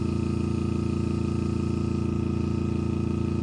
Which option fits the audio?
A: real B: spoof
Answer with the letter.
A